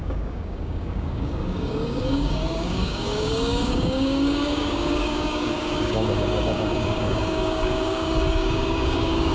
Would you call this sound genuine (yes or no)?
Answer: no